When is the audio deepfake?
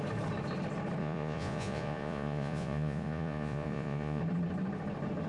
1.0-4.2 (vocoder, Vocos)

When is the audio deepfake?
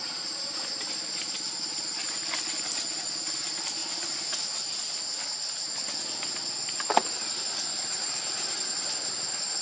none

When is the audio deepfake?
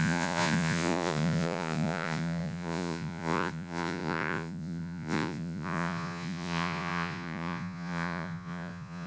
0.0-9.1 (vocoder, Vocos)